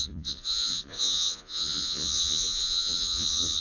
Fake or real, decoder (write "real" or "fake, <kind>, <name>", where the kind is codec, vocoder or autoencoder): fake, vocoder, Vocos